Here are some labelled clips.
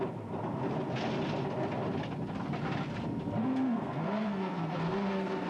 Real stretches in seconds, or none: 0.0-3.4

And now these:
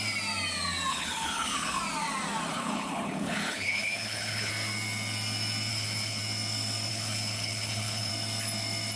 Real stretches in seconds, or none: 0.0-0.9; 1.8-2.5; 4.5-5.7; 6.2-6.9; 8.1-9.0